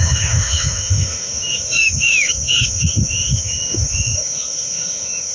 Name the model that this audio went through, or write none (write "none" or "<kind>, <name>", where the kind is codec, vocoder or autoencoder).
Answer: autoencoder, DAC-VAE